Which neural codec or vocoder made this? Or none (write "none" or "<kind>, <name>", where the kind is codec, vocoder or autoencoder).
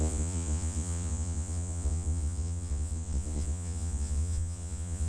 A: vocoder, Vocos